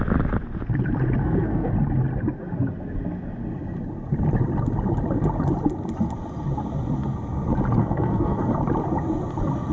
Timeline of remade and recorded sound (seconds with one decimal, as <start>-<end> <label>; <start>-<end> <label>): 0.0-1.2 recorded; 1.2-1.7 remade; 1.7-7.8 recorded; 7.8-8.6 remade; 8.6-9.7 recorded